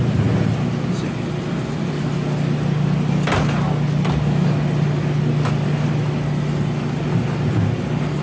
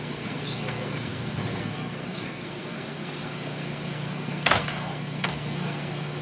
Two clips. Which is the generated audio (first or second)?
second